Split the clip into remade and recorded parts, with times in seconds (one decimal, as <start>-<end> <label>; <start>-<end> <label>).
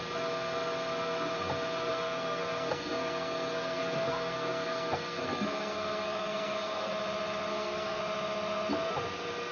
0.0-1.9 recorded; 1.9-6.9 remade; 6.9-7.5 recorded; 7.5-8.0 remade; 8.0-9.5 recorded